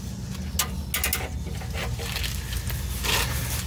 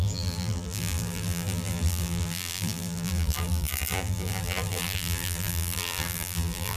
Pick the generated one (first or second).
second